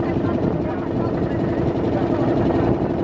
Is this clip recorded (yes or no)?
yes